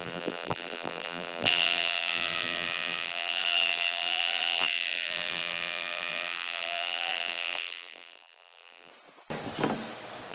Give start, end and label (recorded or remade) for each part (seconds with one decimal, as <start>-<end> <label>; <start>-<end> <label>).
0.0-8.9 remade; 8.9-10.3 recorded